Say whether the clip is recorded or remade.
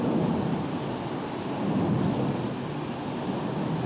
recorded